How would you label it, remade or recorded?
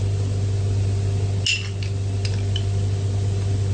recorded